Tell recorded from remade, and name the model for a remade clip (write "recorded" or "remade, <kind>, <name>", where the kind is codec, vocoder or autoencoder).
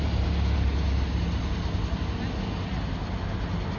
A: recorded